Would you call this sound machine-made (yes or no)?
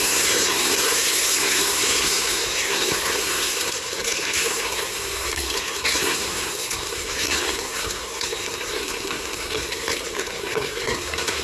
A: yes